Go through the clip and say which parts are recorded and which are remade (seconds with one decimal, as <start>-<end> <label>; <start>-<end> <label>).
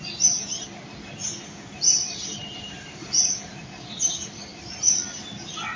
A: 0.0-1.2 recorded; 1.2-3.6 remade; 3.6-5.8 recorded